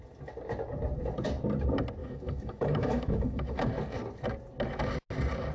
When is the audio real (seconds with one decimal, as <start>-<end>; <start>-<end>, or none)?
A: 0.0-2.0; 3.7-5.5